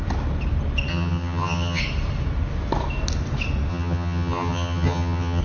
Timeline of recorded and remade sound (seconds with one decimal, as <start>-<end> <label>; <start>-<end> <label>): 0.0-0.9 recorded; 0.9-1.8 remade; 1.8-3.7 recorded; 3.7-5.4 remade